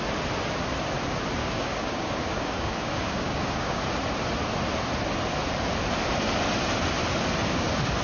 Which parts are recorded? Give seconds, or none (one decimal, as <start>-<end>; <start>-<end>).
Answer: 0.0-1.4; 3.8-8.0

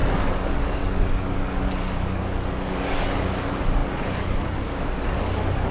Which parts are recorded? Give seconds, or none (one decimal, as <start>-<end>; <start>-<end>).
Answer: none

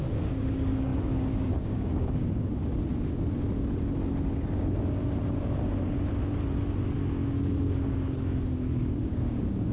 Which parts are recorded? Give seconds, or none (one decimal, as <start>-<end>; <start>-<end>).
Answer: 2.7-7.1

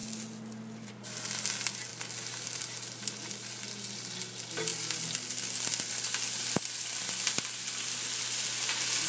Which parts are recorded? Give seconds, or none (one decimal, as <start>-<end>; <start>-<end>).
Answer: 0.0-9.1

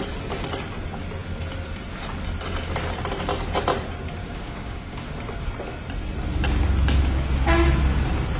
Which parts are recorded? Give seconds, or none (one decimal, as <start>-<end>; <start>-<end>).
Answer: 0.0-4.2; 5.1-8.4